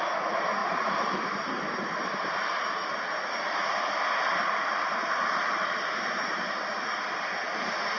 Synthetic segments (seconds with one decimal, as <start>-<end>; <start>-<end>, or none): 0.6-2.2